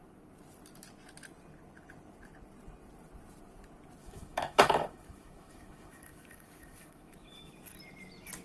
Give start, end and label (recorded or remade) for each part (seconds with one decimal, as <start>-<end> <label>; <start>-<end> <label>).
0.0-4.0 recorded; 4.0-7.5 remade; 7.5-8.4 recorded